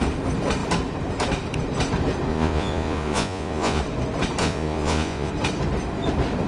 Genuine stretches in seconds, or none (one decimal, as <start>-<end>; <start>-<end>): 0.0-2.3; 3.8-4.4; 5.3-6.5